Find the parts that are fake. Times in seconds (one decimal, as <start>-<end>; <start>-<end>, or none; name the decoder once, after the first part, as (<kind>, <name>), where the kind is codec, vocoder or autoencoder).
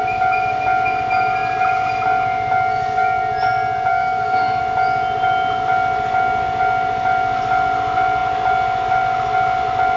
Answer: 3.9-4.6 (codec, SNAC)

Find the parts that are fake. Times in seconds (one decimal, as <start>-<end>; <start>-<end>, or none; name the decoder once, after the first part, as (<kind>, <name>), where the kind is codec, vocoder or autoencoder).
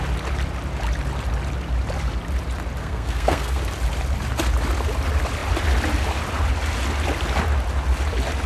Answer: 2.8-3.6 (codec, SNAC)